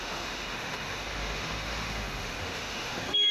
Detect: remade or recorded remade